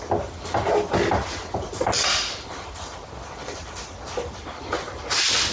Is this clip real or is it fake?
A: real